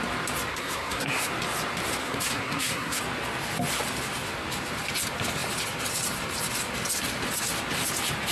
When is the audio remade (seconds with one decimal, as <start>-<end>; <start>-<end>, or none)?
0.5-1.3; 2.0-3.0